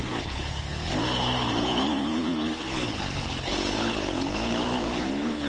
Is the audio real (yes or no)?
no